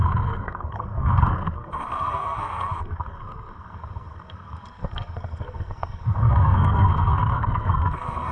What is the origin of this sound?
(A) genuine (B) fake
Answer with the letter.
B